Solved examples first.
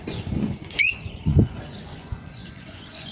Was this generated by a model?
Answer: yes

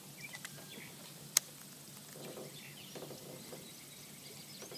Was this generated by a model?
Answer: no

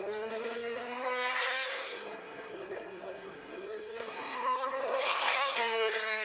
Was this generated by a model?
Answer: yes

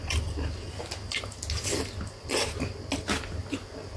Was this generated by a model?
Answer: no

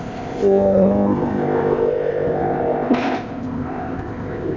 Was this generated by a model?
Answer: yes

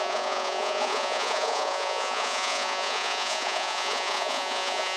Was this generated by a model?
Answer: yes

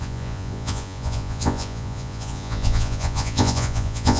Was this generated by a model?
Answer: yes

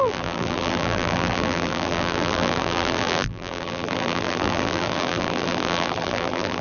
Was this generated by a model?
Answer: yes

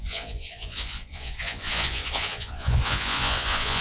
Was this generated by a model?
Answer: yes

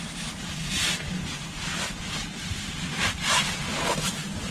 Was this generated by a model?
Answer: no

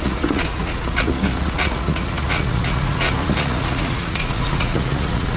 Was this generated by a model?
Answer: yes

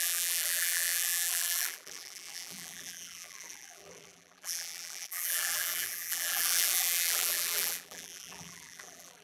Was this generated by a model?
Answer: yes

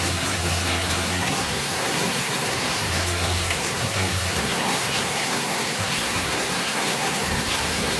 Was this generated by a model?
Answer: yes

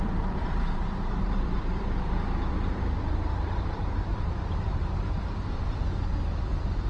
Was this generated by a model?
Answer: yes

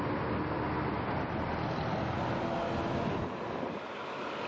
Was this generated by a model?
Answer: no